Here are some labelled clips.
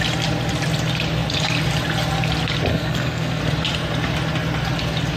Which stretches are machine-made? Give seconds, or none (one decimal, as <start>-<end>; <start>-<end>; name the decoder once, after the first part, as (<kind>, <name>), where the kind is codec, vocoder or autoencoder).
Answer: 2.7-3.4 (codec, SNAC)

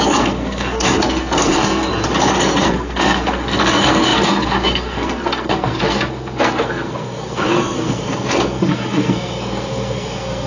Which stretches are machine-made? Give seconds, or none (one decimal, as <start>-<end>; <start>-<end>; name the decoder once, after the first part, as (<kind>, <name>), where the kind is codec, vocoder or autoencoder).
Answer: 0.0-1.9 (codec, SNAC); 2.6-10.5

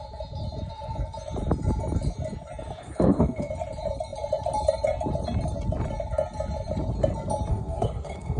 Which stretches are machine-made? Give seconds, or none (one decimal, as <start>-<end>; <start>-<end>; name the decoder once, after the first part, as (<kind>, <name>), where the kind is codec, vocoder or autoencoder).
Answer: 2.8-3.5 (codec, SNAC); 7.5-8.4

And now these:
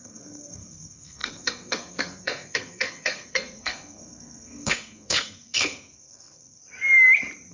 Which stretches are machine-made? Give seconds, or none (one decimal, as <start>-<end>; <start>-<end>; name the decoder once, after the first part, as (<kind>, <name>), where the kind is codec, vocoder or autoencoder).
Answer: 0.0-6.6 (codec, SNAC)

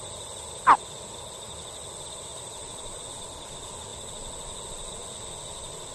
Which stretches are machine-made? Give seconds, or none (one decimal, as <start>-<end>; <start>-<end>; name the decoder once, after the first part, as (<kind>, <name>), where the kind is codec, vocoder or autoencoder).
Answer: none

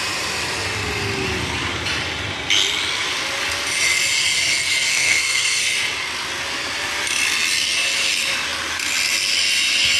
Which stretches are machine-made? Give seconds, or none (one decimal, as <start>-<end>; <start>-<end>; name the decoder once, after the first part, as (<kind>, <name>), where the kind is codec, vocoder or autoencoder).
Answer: 4.9-5.6 (codec, SNAC)

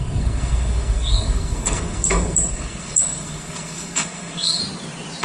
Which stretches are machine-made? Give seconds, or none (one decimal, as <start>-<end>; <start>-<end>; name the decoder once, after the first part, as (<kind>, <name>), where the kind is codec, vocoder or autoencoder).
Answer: 0.0-4.6 (codec, SNAC)